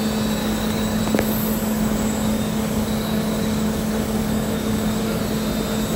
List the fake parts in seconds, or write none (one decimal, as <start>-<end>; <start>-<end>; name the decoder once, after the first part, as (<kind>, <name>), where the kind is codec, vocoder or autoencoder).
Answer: 0.4-1.0 (codec, DAC); 1.6-5.2